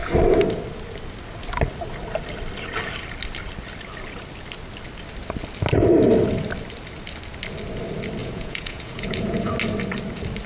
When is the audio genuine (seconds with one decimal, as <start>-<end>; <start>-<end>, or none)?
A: 0.0-8.2; 9.5-10.5